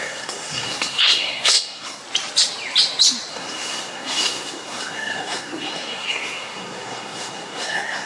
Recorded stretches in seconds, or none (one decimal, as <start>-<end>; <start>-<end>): 2.0-3.3